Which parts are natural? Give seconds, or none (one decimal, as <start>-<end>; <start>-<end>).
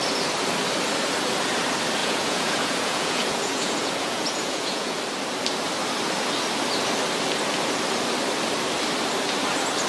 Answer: 0.0-2.0; 5.0-9.9